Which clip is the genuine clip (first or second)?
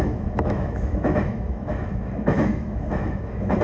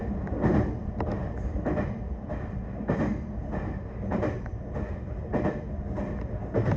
second